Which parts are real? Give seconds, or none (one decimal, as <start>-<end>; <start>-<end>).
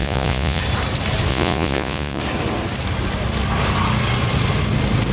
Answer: 0.6-1.3; 2.2-5.1